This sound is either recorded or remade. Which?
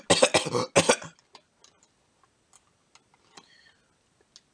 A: recorded